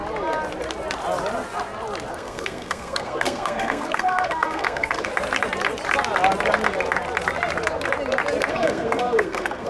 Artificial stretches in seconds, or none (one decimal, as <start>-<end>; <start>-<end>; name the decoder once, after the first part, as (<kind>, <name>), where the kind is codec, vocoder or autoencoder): 2.1-5.1 (codec, SNAC); 8.5-9.7